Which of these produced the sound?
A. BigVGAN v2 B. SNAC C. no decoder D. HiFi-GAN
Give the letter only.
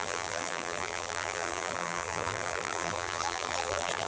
A